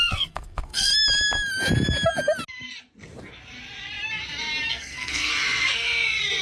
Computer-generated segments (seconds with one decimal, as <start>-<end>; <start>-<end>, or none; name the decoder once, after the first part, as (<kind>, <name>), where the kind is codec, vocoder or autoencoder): 0.0-0.9 (codec, SNAC); 4.7-5.3